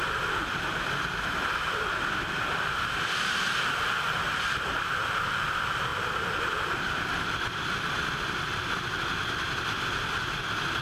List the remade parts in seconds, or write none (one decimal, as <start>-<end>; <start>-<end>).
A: 0.0-10.8